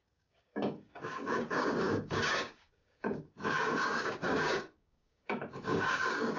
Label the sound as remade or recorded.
remade